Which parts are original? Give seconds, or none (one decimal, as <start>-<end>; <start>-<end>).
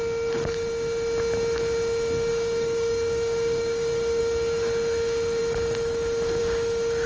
0.0-2.3; 4.2-7.1